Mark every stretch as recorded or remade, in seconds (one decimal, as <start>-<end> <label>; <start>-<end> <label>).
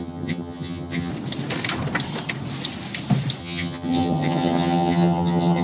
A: 0.0-1.1 remade; 1.1-3.4 recorded; 3.4-5.6 remade